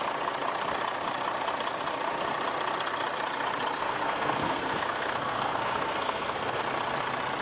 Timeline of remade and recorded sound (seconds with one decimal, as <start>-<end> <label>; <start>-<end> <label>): 0.0-3.8 recorded; 3.8-6.6 remade; 6.6-7.4 recorded